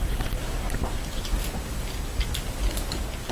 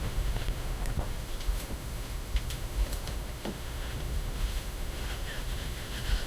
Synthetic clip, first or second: second